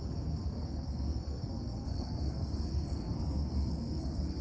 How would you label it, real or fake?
fake